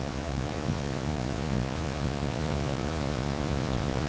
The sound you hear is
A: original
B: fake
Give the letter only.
B